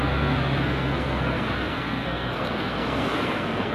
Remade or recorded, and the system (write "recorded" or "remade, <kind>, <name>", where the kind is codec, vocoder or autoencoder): remade, codec, SNAC